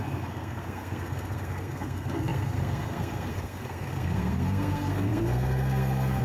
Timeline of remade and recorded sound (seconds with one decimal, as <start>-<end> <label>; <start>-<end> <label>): 0.0-6.2 remade